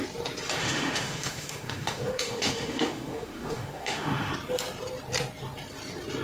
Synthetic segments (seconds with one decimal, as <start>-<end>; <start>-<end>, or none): 0.6-4.3